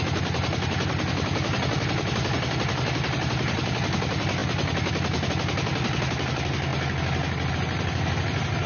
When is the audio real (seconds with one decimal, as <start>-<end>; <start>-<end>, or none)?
0.0-8.7